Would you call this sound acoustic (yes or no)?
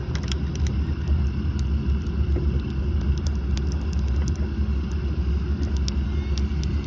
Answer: yes